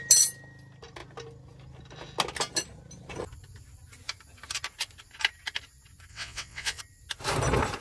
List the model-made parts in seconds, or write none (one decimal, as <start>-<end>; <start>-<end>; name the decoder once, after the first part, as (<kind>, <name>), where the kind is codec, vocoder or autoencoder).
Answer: 6.1-6.8 (vocoder, WaveNeXt)